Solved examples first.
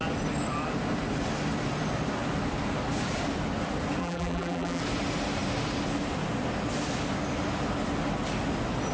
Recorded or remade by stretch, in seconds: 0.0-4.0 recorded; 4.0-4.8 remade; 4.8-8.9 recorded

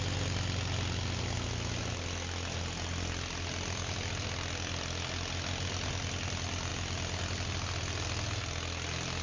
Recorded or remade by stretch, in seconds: 0.0-9.2 recorded